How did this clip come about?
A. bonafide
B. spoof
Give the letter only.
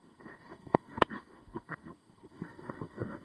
B